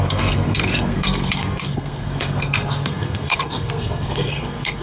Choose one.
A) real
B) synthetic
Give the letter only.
B